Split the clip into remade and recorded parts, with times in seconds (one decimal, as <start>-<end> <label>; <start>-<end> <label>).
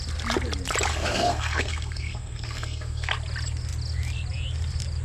0.0-0.9 recorded; 0.9-3.1 remade; 3.1-5.0 recorded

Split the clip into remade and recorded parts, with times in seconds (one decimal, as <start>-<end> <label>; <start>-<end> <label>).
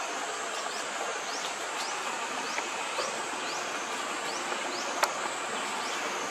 0.0-6.3 recorded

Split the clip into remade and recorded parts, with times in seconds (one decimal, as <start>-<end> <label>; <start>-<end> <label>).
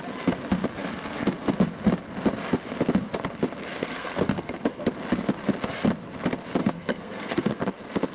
0.0-3.8 recorded; 3.8-4.8 remade; 4.8-6.6 recorded; 6.6-7.6 remade; 7.6-8.1 recorded